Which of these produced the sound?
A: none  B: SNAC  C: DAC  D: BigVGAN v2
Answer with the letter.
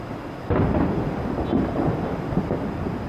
A